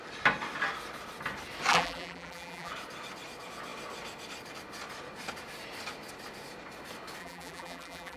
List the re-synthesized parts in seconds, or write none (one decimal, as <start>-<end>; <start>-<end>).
1.7-2.7; 7.2-8.2